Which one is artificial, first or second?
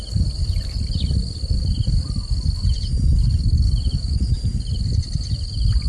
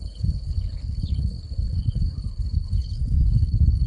second